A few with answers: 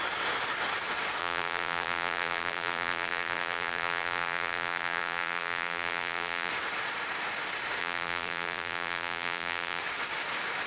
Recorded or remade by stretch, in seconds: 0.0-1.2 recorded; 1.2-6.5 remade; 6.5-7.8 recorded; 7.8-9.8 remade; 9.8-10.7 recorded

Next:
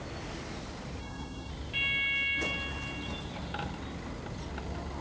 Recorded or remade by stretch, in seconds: 0.0-1.0 recorded; 1.0-1.5 remade; 1.5-5.0 recorded

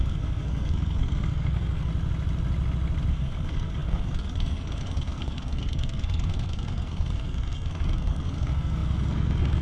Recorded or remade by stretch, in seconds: 0.0-1.9 remade; 1.9-3.1 recorded; 3.1-9.6 remade

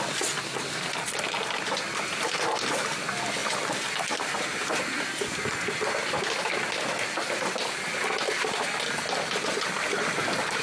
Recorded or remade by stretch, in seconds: 0.0-10.6 recorded

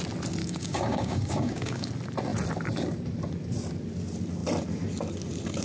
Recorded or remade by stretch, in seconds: 0.0-0.4 recorded; 0.4-1.9 remade; 1.9-5.6 recorded